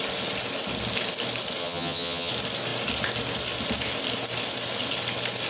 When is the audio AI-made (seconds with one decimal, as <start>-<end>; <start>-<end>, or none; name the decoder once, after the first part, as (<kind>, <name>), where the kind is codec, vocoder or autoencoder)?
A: 1.6-2.3 (vocoder, HiFi-GAN)